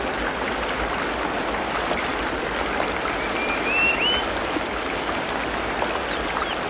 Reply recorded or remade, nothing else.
recorded